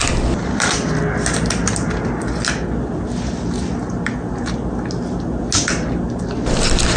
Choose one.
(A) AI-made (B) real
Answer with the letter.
B